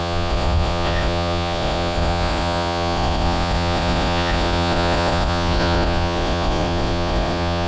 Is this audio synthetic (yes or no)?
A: yes